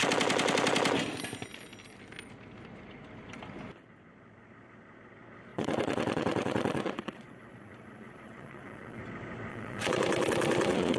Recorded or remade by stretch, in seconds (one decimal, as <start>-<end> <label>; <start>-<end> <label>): 0.0-5.5 recorded; 5.5-9.0 remade; 9.0-9.5 recorded; 9.5-11.0 remade

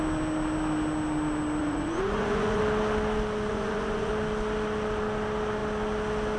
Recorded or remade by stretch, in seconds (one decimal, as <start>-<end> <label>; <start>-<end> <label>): 0.0-1.6 recorded; 1.6-2.6 remade; 2.6-3.5 recorded; 3.5-4.1 remade; 4.1-6.4 recorded